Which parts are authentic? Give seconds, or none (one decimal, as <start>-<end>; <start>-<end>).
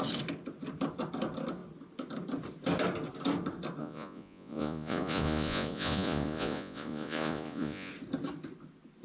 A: 0.0-3.8; 7.9-9.0